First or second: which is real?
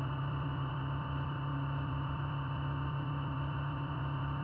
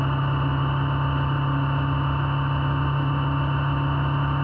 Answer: second